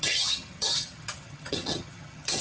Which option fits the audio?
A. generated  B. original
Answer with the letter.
A